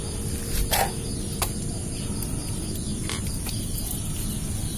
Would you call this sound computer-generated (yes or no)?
yes